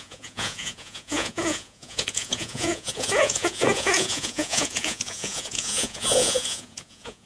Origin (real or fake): fake